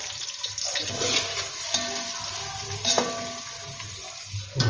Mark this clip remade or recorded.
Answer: recorded